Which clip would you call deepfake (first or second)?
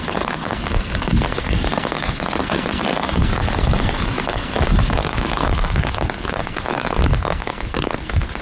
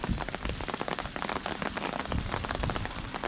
first